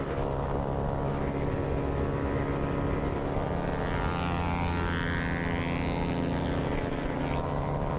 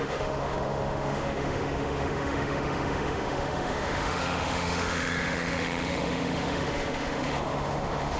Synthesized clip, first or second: second